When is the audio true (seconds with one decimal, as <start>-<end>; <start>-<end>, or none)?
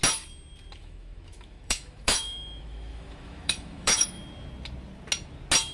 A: 0.0-0.8; 4.2-5.7